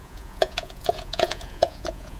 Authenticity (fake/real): fake